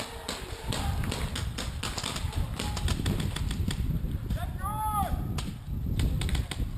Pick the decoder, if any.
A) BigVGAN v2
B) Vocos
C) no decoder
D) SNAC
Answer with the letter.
C